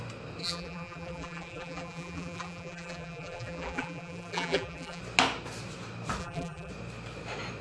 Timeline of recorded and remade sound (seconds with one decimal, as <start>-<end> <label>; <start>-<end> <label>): 0.0-0.4 recorded; 0.4-5.0 remade; 5.0-6.2 recorded; 6.2-6.7 remade; 6.7-7.6 recorded